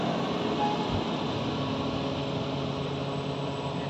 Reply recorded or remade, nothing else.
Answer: recorded